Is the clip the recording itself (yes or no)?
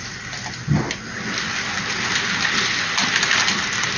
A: yes